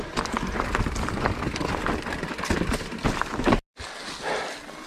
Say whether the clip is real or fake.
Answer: real